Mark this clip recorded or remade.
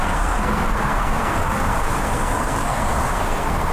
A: remade